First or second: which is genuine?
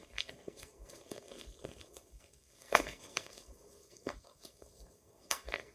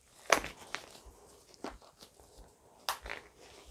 second